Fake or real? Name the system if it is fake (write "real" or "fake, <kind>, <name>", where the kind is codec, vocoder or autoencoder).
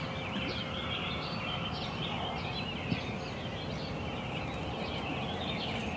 real